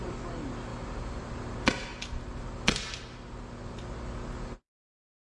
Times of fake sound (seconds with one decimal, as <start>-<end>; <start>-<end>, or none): 0.7-1.4